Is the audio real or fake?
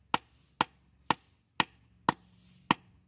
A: real